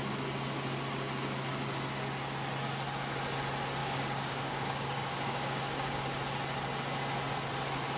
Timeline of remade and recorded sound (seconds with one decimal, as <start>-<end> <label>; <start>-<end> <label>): 0.0-3.8 recorded; 3.8-6.0 remade; 6.0-8.0 recorded